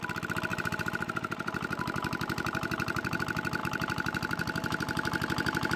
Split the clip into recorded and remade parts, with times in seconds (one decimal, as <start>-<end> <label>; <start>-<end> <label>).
0.0-0.5 recorded; 0.5-3.2 remade; 3.2-3.6 recorded; 3.6-5.8 remade